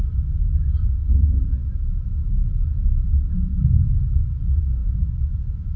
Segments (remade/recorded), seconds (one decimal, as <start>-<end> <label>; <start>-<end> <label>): 0.0-0.4 recorded; 0.4-1.5 remade; 1.5-5.8 recorded